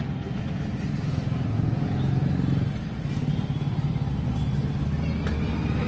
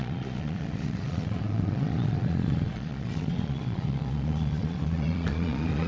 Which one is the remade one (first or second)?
second